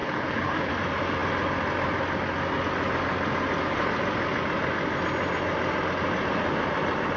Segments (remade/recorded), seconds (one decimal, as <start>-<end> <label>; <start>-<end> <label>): 0.0-0.7 remade; 0.7-7.2 recorded